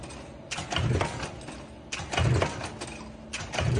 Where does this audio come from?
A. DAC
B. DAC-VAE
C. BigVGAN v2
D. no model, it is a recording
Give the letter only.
D